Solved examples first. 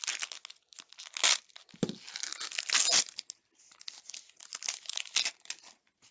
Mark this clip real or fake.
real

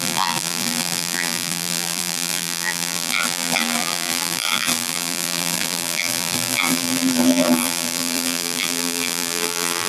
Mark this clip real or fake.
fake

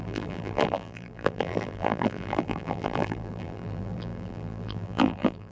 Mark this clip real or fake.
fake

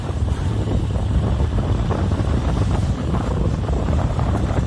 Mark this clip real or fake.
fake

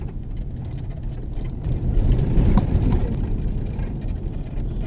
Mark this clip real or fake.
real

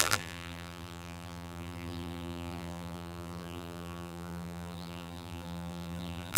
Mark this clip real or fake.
fake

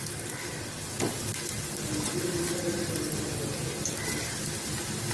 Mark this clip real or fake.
real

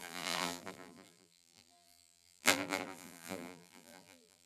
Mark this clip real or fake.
fake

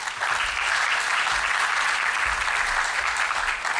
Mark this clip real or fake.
real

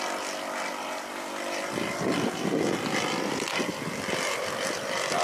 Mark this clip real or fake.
fake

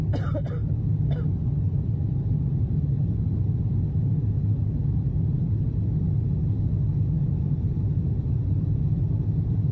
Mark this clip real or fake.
real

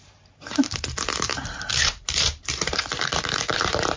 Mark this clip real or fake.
fake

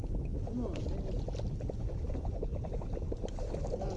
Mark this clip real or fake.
real